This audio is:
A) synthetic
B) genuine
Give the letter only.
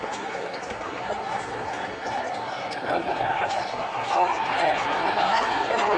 A